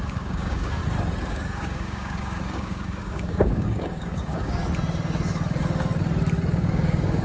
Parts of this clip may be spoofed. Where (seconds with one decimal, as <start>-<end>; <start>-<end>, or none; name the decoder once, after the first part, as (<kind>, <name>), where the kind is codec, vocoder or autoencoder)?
0.0-0.8 (codec, DAC); 1.3-4.6; 6.5-7.2

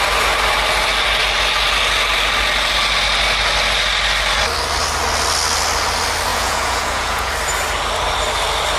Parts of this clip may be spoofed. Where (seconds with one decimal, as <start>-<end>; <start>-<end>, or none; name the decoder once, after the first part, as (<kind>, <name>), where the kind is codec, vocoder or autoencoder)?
6.3-7.3 (vocoder, Vocos)

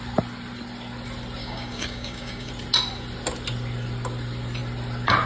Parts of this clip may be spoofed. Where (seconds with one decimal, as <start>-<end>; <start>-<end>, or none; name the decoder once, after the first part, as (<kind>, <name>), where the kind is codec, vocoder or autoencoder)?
1.4-2.5 (codec, DAC)

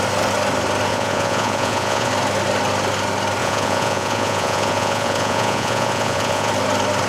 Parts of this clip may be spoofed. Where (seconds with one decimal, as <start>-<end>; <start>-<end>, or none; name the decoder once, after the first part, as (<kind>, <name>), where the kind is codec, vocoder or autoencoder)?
0.9-2.1 (vocoder, Vocos); 3.4-6.5

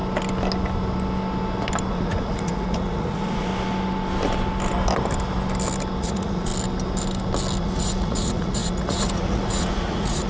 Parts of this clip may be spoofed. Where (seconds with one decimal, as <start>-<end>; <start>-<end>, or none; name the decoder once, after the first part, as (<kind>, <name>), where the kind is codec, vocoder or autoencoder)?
1.9-3.5 (vocoder, Vocos); 6.0-6.5; 7.6-10.3

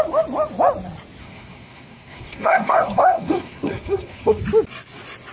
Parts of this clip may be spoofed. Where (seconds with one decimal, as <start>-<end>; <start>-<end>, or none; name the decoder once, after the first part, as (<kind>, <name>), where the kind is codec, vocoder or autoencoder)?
1.2-4.4 (codec, SNAC)